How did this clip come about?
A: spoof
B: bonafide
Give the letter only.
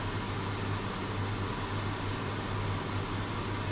B